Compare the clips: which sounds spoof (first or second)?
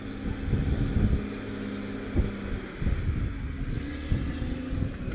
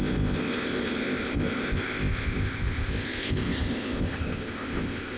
second